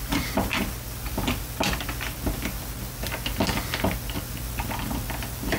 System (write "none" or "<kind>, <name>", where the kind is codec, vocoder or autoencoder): none